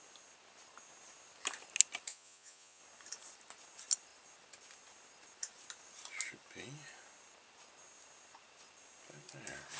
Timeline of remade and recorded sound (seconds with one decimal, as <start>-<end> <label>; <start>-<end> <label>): 0.0-2.1 recorded; 2.1-2.8 remade; 2.8-9.8 recorded